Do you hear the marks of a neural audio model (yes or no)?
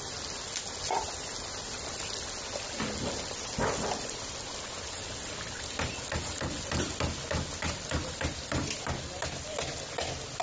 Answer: no